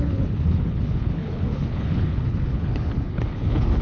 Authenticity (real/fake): fake